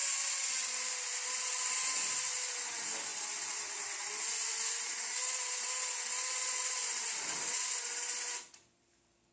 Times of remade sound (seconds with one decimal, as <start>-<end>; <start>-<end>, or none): none